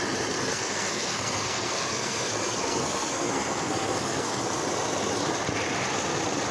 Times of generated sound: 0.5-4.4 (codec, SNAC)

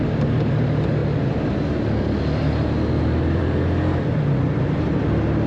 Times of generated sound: none

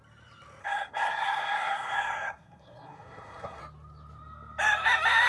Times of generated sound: 0.6-3.6 (codec, SNAC)

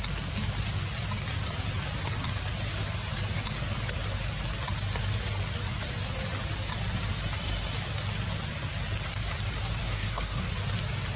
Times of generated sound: 9.8-10.5 (codec, SNAC)

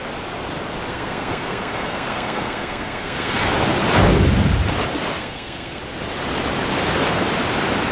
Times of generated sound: 0.9-3.5 (codec, SNAC); 5.2-5.8

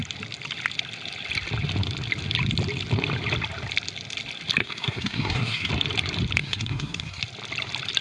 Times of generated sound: 4.6-5.7 (codec, SNAC); 6.4-7.2

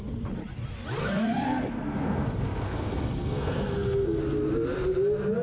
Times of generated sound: 1.0-4.2 (codec, SNAC)

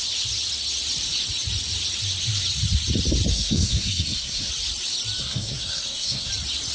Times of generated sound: 3.3-4.5 (codec, SNAC); 5.2-6.3